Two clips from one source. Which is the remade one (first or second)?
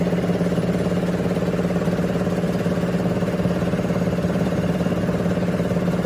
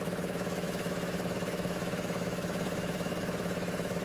second